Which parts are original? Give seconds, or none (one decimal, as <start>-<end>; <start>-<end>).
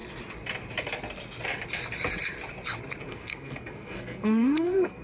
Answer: 0.0-3.0